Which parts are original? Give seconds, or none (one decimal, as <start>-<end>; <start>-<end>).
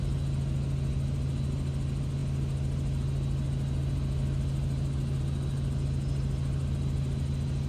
0.0-7.7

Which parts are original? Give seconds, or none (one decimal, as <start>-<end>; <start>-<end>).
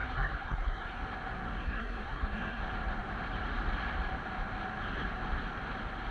1.0-1.6; 2.6-6.1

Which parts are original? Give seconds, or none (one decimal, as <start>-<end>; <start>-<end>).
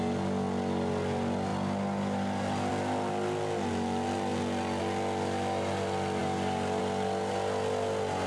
0.0-8.3